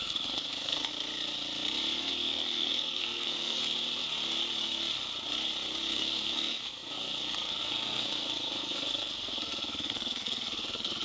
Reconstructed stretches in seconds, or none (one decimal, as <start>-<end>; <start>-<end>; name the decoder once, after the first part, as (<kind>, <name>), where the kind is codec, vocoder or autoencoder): 0.0-0.9 (codec, SNAC); 2.0-3.6; 5.9-11.0